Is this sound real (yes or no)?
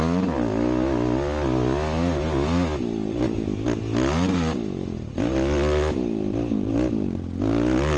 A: yes